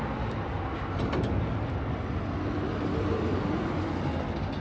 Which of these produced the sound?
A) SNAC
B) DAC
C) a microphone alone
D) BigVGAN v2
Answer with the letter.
C